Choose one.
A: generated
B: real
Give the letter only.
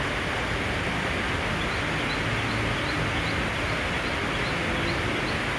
B